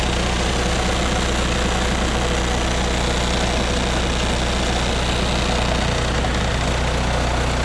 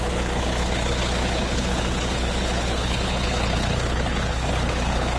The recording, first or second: first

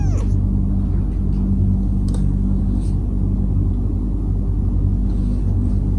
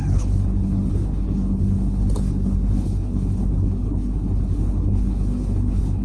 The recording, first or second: first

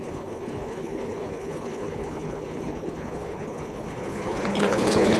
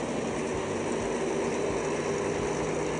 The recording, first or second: second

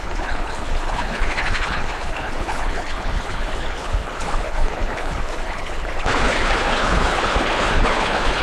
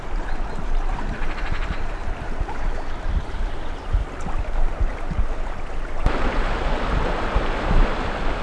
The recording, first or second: second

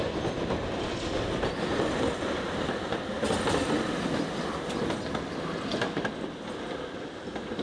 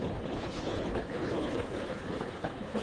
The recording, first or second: first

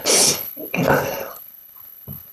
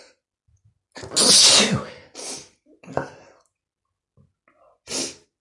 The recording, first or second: second